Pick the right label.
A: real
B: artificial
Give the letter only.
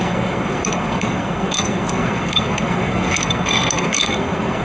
B